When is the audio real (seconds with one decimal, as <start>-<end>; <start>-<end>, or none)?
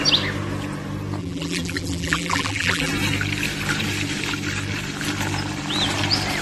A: 0.0-1.2; 2.9-6.4